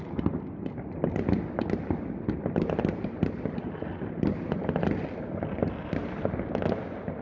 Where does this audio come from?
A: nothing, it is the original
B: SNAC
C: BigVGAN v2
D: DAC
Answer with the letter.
A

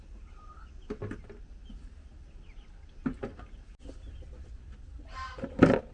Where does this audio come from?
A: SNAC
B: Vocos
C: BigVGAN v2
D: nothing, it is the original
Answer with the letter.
D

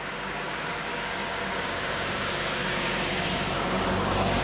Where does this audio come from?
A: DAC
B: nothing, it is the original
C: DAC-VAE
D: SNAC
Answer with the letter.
A